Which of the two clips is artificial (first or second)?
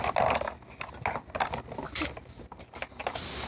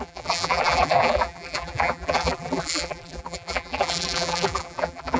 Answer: second